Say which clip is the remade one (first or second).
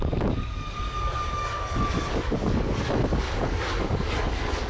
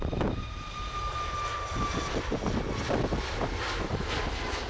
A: first